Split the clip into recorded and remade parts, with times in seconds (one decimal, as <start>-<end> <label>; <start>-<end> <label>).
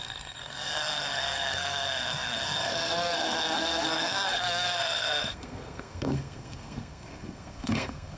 0.0-8.2 remade